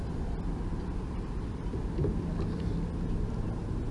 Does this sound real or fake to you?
real